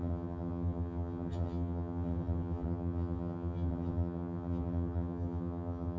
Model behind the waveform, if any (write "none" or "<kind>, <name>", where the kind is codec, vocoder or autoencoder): vocoder, HiFi-GAN